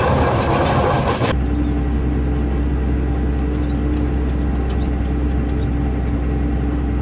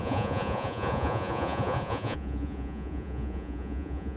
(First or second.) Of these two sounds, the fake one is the second